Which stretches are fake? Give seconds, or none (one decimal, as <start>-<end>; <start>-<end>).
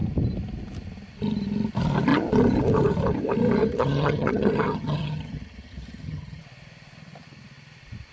3.6-6.4